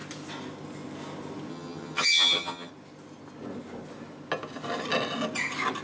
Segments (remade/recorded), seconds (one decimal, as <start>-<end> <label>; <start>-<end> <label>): 0.0-1.5 recorded; 1.5-2.7 remade; 2.7-5.8 recorded